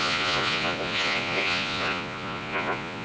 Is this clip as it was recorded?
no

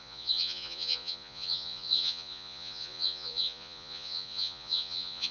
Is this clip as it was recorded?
no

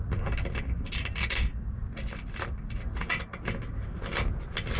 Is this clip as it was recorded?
yes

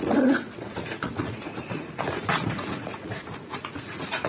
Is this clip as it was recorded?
no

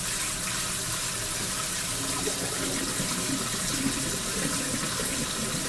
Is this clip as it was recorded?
yes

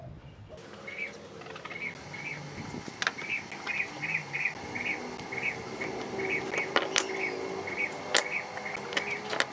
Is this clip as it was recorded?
yes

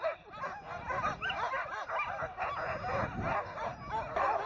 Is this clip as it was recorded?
yes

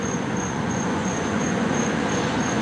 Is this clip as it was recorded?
no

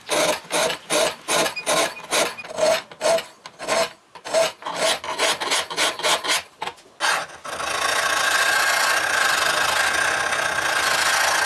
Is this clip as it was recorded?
yes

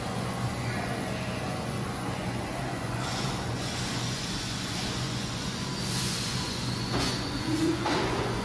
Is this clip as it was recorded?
no